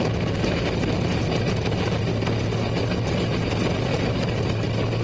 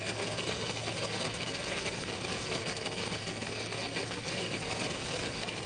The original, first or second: first